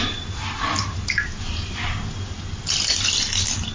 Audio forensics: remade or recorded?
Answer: recorded